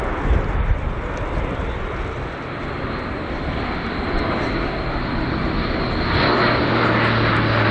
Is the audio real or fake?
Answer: real